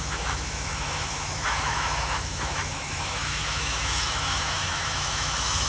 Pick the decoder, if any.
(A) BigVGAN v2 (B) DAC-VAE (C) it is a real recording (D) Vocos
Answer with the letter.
B